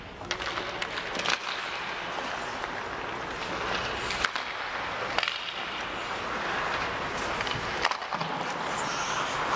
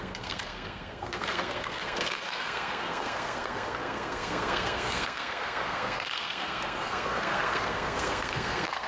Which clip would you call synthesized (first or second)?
second